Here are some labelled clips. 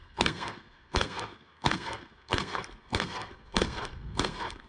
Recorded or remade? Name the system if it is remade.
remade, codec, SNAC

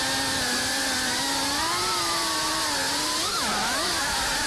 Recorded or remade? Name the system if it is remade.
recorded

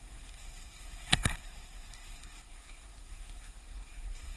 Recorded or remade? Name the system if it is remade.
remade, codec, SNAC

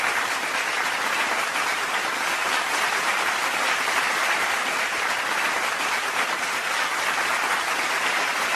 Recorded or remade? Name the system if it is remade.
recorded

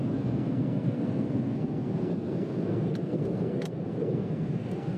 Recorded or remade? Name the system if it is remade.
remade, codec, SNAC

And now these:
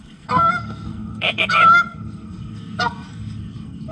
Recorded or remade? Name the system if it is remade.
remade, codec, SNAC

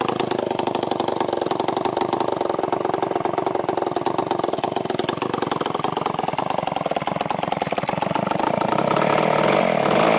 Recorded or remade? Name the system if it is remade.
recorded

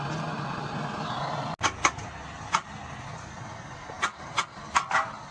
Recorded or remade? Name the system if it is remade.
recorded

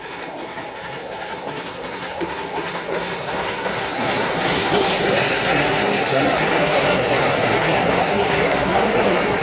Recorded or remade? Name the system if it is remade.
remade, codec, SNAC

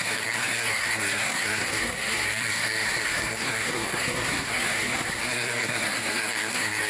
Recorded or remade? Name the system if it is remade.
remade, codec, SNAC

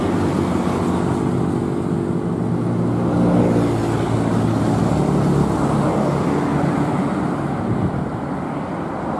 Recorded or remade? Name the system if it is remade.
recorded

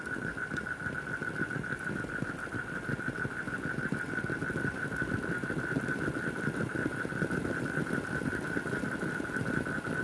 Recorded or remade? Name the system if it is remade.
recorded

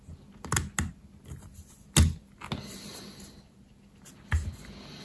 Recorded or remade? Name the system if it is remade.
recorded